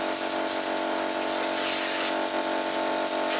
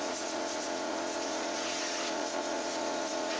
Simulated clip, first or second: second